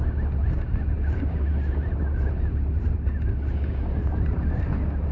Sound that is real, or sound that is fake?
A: real